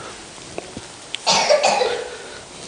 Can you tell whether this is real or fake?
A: real